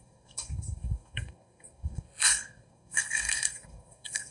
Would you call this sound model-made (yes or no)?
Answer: yes